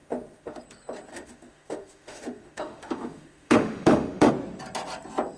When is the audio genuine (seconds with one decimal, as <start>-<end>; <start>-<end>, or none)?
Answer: 0.6-1.1; 4.3-5.4